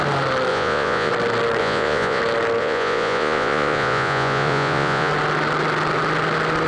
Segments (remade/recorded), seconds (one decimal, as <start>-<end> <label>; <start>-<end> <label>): 0.0-0.5 recorded; 0.5-1.1 remade; 1.1-1.6 recorded; 1.6-2.2 remade; 2.2-2.6 recorded; 2.6-5.1 remade; 5.1-6.7 recorded